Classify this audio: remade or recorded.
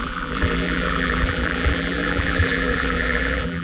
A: remade